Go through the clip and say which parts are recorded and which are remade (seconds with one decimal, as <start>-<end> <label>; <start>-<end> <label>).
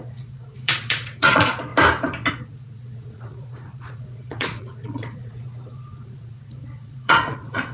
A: 0.0-1.7 remade; 1.7-2.3 recorded; 2.3-7.7 remade